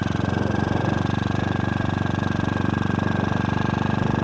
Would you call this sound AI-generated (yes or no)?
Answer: no